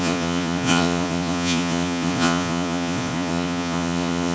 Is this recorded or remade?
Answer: remade